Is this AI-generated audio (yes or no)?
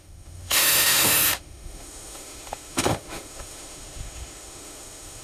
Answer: yes